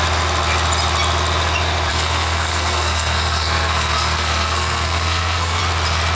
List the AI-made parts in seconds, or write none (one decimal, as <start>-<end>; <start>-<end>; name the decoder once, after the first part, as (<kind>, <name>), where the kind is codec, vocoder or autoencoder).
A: 1.9-5.6 (codec, SNAC)